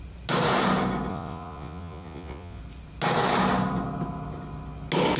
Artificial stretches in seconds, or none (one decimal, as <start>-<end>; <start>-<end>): 1.1-2.6